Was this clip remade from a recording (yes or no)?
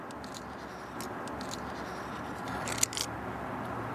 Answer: no